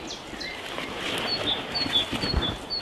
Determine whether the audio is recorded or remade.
recorded